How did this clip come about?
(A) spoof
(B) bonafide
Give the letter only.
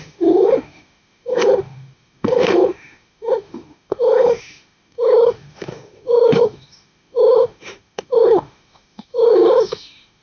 A